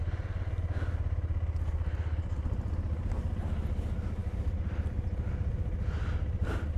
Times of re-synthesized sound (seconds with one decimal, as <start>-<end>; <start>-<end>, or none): none